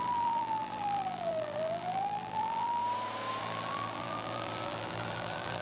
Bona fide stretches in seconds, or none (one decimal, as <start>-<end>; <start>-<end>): 2.8-3.4